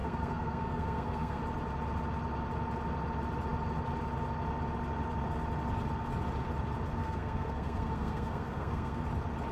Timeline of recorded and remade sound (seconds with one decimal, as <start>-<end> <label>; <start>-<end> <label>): 0.0-1.4 remade; 1.4-7.0 recorded; 7.0-9.0 remade; 9.0-9.5 recorded